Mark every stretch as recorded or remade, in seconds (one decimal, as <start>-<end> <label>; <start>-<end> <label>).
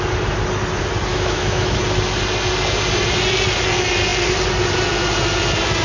0.0-1.1 recorded; 1.1-1.8 remade; 1.8-5.8 recorded